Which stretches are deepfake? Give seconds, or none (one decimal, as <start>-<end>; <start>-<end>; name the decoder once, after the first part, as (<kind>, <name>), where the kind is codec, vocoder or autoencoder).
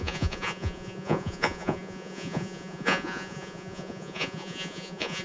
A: 0.0-5.2 (vocoder, Vocos)